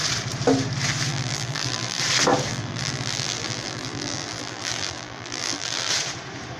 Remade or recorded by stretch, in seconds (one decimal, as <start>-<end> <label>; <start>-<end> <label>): 0.0-1.1 recorded; 1.1-2.0 remade; 2.0-2.5 recorded; 2.5-5.9 remade; 5.9-6.6 recorded

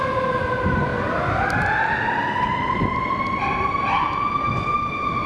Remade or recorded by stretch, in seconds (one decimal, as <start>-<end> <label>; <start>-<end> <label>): 0.0-5.3 recorded